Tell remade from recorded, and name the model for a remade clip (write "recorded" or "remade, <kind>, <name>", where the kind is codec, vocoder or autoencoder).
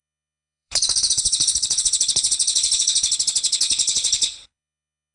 remade, codec, HILCodec